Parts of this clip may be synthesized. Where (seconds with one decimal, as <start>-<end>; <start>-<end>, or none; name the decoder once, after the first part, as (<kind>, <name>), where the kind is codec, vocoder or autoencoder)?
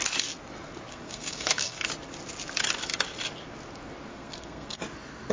0.9-1.8 (codec, SNAC); 4.1-4.8